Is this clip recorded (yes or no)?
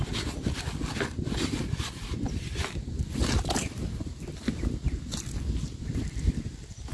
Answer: yes